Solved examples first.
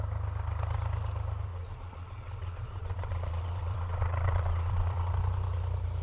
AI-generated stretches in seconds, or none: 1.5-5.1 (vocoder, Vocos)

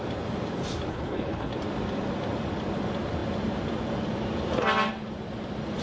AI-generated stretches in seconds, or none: 0.9-1.5 (codec, HILCodec)